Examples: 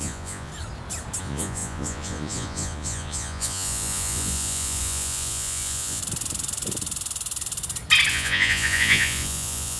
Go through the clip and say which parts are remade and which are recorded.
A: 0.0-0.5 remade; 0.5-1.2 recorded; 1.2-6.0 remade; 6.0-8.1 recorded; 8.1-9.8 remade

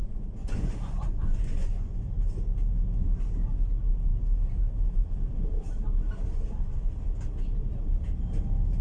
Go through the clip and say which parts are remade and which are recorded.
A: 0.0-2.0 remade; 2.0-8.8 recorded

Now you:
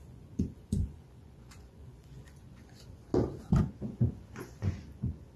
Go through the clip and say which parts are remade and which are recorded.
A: 0.0-3.1 remade; 3.1-3.6 recorded; 3.6-5.4 remade